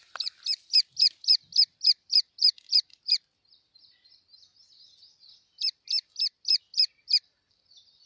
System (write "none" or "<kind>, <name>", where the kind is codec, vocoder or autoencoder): vocoder, BigVGAN v2